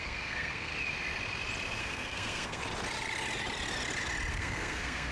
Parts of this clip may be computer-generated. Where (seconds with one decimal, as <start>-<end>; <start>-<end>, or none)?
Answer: 0.0-0.7; 1.8-2.6; 4.3-5.1